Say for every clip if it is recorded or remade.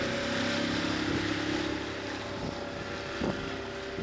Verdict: recorded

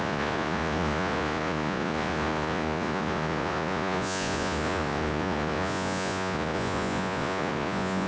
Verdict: remade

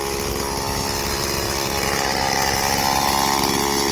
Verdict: recorded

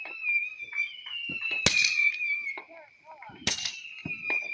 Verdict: recorded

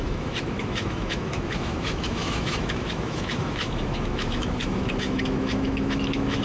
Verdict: remade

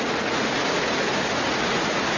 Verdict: remade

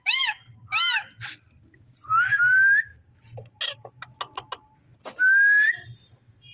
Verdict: recorded